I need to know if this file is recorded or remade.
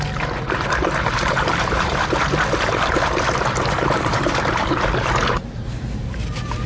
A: remade